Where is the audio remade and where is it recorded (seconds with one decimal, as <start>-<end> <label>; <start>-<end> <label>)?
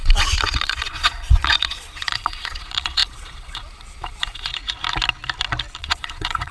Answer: 0.0-4.5 remade; 4.5-5.8 recorded; 5.8-6.5 remade